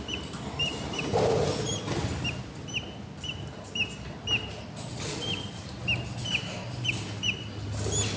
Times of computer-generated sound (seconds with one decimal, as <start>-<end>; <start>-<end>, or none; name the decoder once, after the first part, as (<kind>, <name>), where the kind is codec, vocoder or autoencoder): none